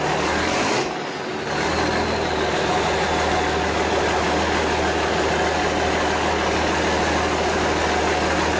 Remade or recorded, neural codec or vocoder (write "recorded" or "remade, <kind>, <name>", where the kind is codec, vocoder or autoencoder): recorded